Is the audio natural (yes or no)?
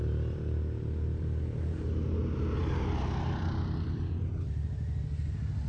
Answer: yes